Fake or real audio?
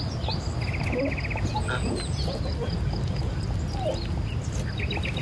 real